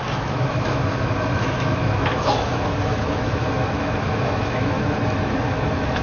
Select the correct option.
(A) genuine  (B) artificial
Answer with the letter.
B